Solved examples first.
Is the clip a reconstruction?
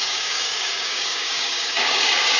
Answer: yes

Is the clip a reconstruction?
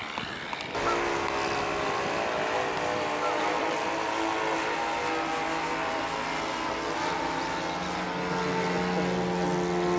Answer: no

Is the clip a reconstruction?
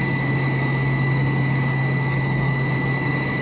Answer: yes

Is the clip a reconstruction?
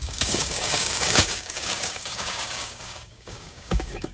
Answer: yes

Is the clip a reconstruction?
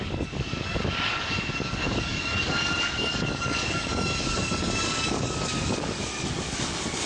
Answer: yes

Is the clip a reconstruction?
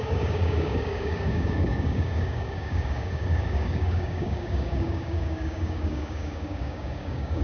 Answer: yes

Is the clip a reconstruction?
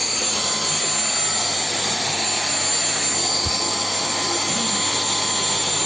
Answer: no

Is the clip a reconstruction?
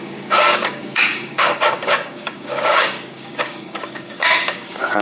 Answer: yes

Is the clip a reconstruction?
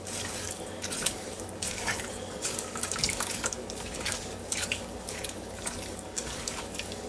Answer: yes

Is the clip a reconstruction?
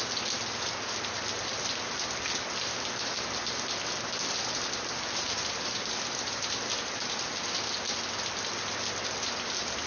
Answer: no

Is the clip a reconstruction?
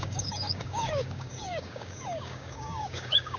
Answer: yes